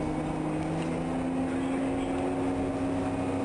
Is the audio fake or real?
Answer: real